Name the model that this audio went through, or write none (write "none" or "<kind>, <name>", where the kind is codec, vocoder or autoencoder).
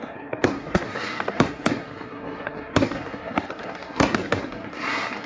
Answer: codec, SNAC